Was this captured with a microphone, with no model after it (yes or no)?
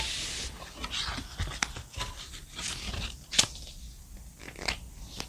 yes